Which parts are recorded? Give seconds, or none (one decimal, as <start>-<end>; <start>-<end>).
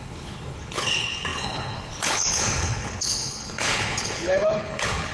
none